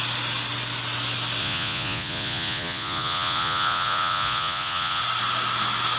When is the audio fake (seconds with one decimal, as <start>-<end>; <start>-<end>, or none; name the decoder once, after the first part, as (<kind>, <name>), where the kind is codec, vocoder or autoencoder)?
1.4-5.0 (vocoder, Vocos)